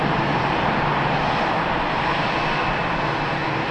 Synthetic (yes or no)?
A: no